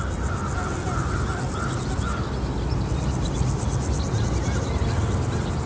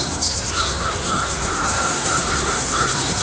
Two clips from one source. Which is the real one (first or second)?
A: first